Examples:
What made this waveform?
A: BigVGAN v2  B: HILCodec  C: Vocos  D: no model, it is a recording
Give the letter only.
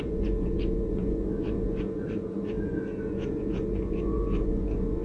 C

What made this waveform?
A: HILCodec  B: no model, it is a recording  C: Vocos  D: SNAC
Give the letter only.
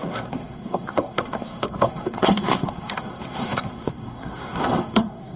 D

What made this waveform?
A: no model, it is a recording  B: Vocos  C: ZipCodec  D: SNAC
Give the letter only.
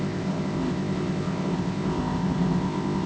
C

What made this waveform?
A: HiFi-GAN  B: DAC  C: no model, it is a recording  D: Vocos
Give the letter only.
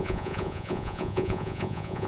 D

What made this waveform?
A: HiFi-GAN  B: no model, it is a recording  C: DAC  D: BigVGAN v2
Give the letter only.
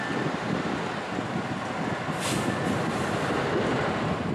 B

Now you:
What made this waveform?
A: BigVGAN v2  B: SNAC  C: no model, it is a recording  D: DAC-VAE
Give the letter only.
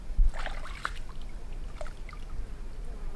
C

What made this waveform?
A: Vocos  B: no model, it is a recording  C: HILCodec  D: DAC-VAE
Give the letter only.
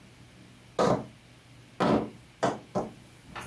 B